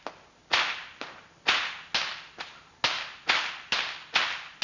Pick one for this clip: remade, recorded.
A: recorded